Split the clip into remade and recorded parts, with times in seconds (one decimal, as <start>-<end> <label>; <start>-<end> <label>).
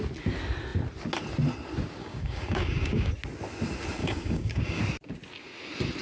0.0-2.0 recorded; 2.0-3.1 remade; 3.1-4.0 recorded; 4.0-4.8 remade; 4.8-6.0 recorded